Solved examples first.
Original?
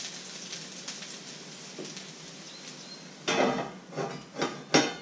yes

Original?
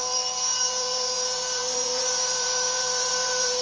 no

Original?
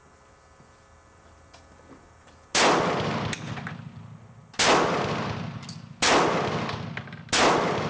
yes